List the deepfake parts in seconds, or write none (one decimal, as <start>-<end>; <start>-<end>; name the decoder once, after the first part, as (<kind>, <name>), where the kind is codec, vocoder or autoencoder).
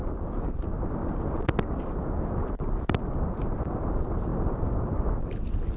none